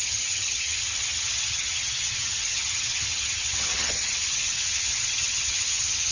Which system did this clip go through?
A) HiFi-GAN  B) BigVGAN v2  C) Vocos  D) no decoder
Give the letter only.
A